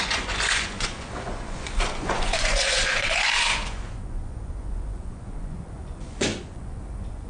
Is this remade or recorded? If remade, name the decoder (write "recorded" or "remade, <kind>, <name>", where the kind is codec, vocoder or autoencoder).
remade, vocoder, Vocos